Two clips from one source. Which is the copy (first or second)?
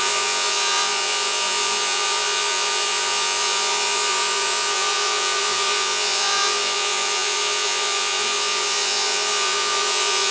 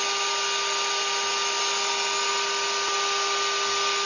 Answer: first